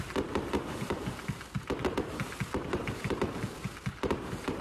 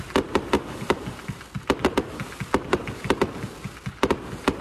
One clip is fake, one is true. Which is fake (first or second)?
first